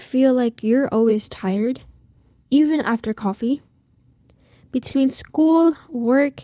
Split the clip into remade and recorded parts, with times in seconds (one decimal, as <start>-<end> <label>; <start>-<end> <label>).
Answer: 0.0-1.1 recorded; 1.1-4.2 remade; 4.2-4.9 recorded; 4.9-5.9 remade; 5.9-6.4 recorded